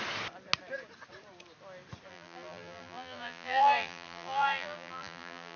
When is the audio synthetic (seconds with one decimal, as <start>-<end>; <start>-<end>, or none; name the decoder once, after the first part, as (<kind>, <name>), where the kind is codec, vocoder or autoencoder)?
2.1-5.6 (vocoder, BigVGAN v2)